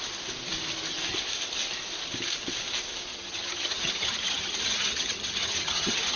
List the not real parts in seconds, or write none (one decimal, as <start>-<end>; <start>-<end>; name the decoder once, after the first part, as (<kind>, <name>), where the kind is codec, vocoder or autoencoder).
3.1-6.2 (vocoder, HiFi-GAN)